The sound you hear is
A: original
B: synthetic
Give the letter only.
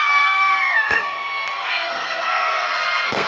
B